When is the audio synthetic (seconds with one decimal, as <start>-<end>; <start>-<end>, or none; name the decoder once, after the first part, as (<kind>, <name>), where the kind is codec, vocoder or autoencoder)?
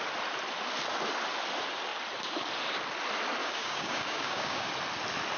3.4-4.7 (codec, DAC)